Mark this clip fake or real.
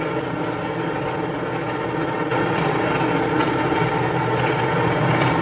real